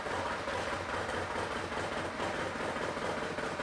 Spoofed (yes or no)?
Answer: no